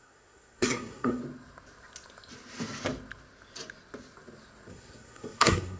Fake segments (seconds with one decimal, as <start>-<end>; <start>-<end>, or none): 0.0-1.2; 4.7-5.8